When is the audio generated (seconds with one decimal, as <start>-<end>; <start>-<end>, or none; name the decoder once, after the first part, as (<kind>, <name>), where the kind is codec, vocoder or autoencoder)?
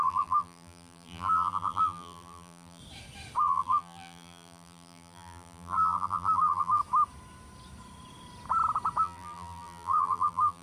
0.0-2.8 (vocoder, BigVGAN v2); 3.4-6.8; 9.0-10.6